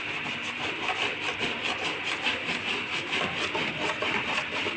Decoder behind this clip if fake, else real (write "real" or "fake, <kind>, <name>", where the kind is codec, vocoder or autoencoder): real